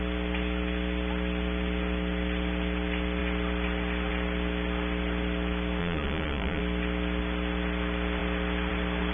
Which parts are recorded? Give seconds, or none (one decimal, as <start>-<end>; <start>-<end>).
0.0-5.8; 6.6-9.1